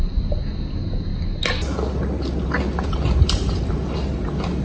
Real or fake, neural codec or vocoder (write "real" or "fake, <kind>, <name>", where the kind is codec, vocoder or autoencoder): real